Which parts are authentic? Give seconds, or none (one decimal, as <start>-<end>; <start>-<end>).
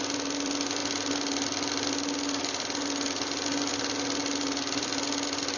0.0-5.6